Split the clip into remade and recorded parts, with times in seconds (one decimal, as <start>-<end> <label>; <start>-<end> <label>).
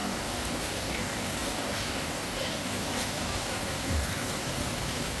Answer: 0.0-5.2 remade